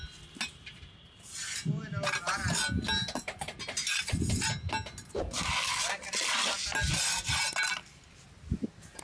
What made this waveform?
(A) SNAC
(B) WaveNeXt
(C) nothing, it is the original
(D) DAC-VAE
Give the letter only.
C